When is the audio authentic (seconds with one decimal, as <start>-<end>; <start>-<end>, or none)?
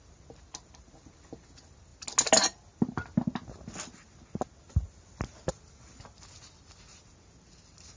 0.0-8.0